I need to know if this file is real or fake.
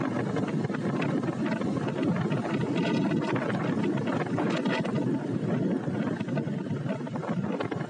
real